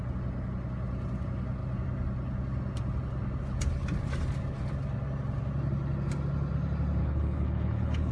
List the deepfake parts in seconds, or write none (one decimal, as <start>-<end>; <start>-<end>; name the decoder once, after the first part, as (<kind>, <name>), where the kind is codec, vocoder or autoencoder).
7.0-8.1 (codec, HILCodec)